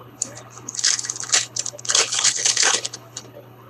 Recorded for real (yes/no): no